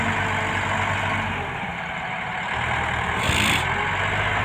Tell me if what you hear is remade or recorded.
recorded